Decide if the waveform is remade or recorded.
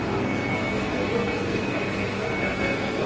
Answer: remade